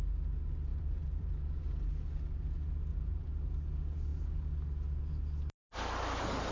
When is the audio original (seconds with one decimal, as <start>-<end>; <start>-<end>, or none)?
0.0-0.7; 1.3-2.9; 3.4-6.5